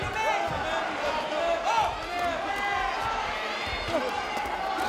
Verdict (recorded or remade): recorded